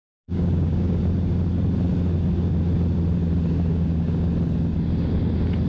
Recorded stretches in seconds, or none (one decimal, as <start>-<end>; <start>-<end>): 1.0-3.7; 4.3-5.7